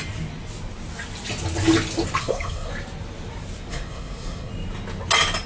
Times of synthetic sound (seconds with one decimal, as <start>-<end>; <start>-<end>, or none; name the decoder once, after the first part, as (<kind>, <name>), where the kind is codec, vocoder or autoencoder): 2.2-2.7 (codec, SNAC); 3.7-4.5